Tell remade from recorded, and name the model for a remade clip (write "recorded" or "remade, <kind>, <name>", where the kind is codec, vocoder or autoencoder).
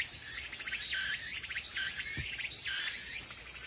recorded